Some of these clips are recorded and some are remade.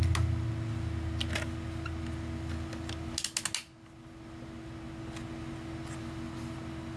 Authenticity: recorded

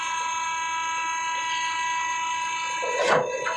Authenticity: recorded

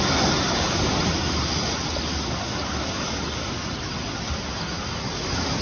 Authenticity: recorded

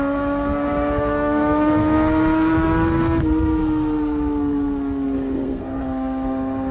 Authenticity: remade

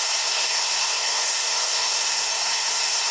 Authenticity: remade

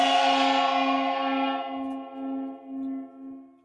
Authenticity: recorded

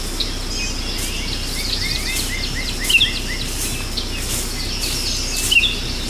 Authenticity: recorded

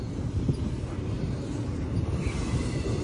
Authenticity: recorded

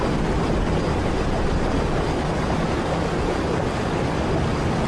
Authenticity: recorded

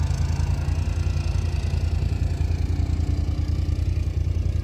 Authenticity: recorded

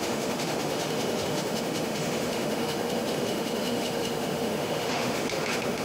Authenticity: remade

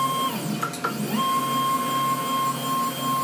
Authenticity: recorded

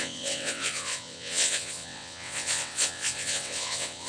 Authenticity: remade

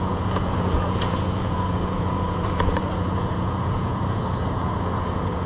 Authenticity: remade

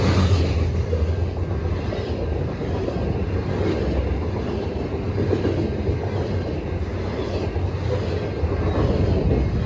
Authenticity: recorded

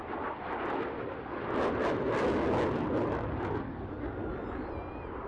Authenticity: recorded